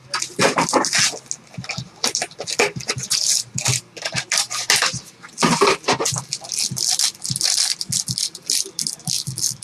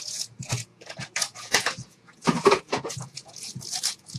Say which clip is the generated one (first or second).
second